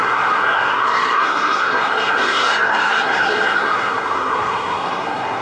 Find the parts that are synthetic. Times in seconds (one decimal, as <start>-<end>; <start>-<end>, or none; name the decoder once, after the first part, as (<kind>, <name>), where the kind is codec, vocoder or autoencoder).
0.0-5.4 (codec, SNAC)